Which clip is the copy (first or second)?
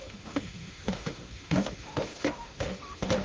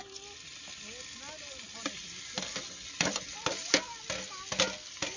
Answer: first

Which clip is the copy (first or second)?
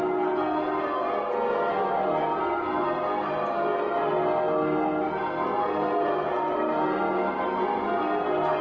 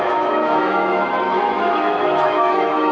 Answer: second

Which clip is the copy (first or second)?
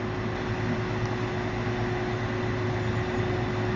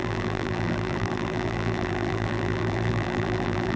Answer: second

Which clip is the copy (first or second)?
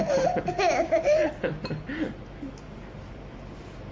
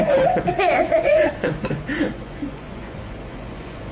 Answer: second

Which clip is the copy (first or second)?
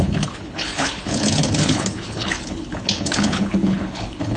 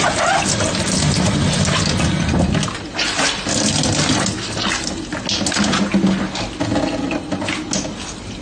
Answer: first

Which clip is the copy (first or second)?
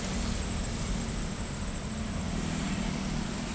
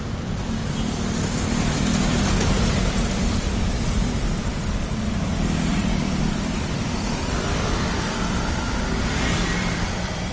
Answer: second